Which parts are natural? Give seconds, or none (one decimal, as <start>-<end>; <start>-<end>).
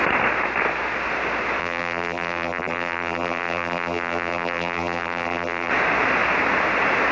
0.0-1.6; 5.7-7.1